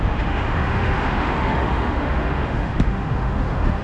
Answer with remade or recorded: remade